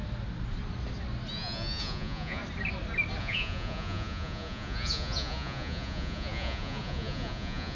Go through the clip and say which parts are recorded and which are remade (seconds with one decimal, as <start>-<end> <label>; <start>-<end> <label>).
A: 0.0-1.3 recorded; 1.3-2.4 remade; 2.4-3.2 recorded; 3.2-7.8 remade